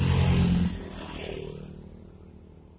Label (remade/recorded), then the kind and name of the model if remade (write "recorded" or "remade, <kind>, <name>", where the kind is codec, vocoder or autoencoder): recorded